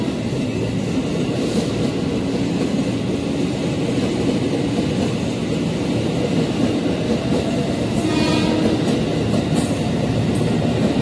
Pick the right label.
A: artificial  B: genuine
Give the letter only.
B